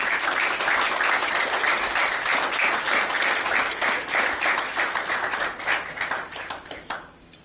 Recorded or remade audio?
recorded